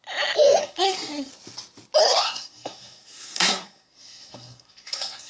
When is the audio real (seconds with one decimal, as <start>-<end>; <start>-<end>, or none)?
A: 0.0-0.6; 1.3-2.0